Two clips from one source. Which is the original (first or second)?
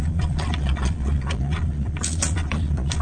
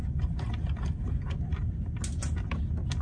second